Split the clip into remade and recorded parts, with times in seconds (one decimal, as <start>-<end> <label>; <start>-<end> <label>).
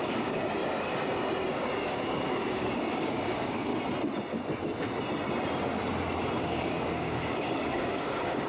0.0-0.6 remade; 0.6-1.5 recorded; 1.5-3.7 remade; 3.7-6.4 recorded; 6.4-8.5 remade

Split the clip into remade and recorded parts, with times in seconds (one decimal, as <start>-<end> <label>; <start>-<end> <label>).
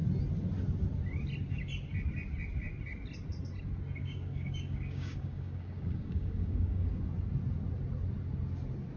0.0-4.0 recorded; 4.0-7.0 remade; 7.0-9.0 recorded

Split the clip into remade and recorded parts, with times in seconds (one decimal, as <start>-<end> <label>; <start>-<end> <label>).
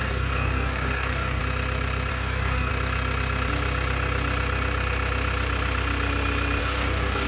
0.0-1.4 remade; 1.4-2.1 recorded; 2.1-2.7 remade; 2.7-6.6 recorded; 6.6-7.3 remade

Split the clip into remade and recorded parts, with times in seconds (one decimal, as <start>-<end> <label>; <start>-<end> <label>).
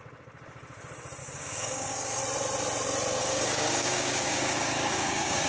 0.0-1.2 recorded; 1.2-2.2 remade; 2.2-3.2 recorded; 3.2-5.5 remade